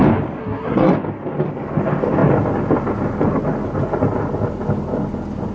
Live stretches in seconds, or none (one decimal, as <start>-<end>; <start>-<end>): 0.0-0.4; 0.9-5.5